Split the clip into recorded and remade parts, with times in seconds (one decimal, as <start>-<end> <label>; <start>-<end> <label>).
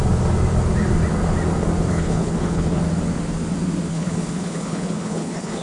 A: 0.0-1.9 recorded; 1.9-2.8 remade; 2.8-3.9 recorded; 3.9-5.6 remade